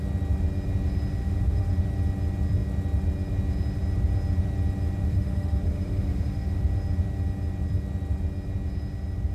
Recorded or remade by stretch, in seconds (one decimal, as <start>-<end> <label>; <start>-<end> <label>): 0.0-1.2 recorded; 1.2-1.7 remade; 1.7-5.0 recorded; 5.0-6.6 remade; 6.6-9.3 recorded